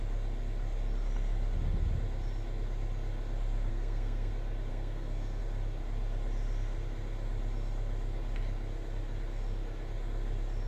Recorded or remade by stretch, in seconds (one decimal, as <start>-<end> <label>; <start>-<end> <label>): 0.0-3.7 recorded; 3.7-4.3 remade; 4.3-4.7 recorded; 4.7-5.4 remade; 5.4-10.7 recorded